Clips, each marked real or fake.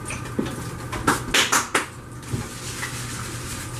real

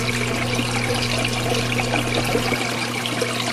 real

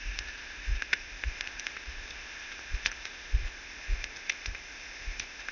fake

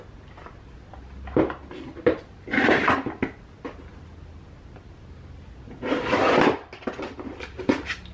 real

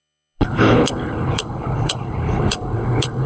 fake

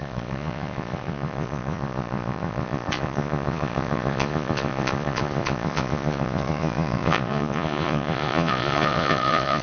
fake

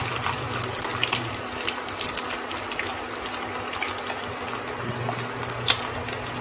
real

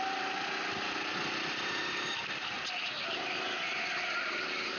real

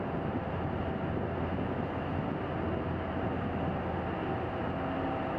real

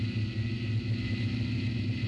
real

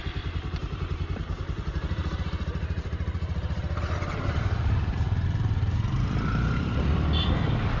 fake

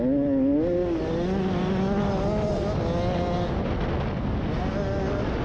real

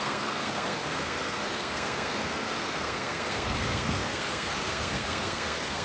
fake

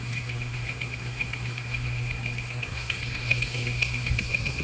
fake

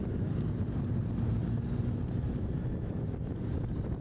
real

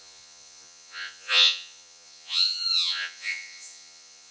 fake